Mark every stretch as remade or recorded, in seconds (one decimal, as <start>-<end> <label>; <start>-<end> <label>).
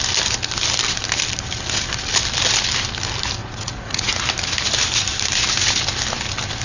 0.0-3.4 recorded; 3.4-4.1 remade; 4.1-6.6 recorded